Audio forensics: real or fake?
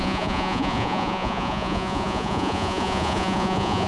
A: fake